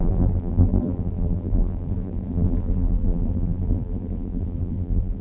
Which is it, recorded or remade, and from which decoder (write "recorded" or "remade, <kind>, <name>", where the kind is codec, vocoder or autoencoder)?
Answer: remade, vocoder, BigVGAN v2